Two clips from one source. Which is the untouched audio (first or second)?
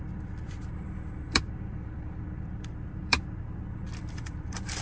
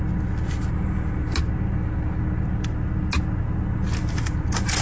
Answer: second